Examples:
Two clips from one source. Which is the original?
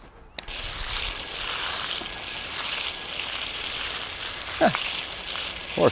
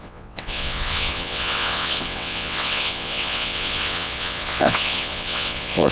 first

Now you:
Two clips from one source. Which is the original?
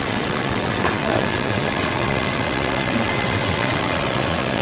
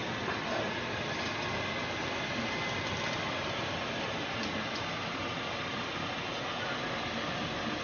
second